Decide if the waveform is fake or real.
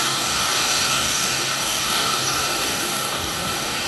fake